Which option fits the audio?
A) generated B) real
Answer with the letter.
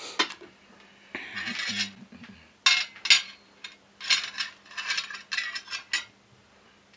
B